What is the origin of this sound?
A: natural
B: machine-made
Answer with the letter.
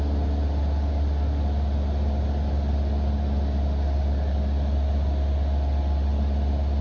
A